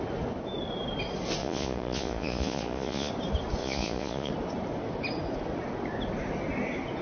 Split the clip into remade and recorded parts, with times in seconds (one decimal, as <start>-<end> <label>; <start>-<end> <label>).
0.0-1.4 recorded; 1.4-3.1 remade; 3.1-3.6 recorded; 3.6-4.3 remade; 4.3-7.0 recorded